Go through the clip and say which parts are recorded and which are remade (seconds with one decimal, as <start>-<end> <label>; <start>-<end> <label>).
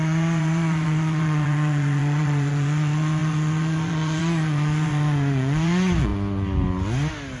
0.0-6.1 remade; 6.1-7.4 recorded